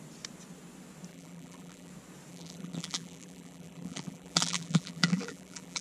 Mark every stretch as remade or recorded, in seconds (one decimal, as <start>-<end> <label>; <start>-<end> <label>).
0.0-1.1 recorded; 1.1-1.9 remade; 1.9-2.3 recorded; 2.3-5.8 remade